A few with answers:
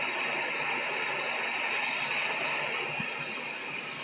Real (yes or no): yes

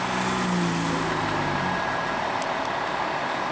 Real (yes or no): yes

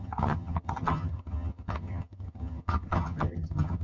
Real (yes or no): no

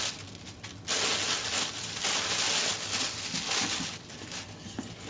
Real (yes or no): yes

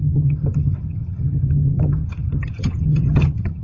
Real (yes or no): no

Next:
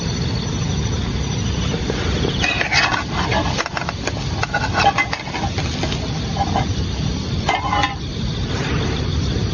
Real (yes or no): yes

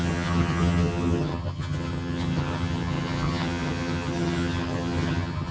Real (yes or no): no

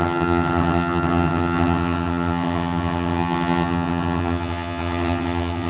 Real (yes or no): no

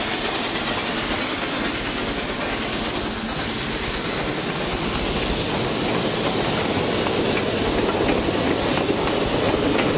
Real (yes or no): yes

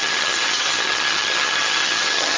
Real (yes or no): no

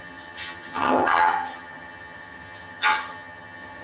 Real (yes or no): no